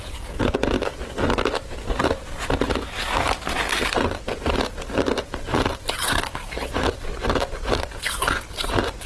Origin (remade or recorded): recorded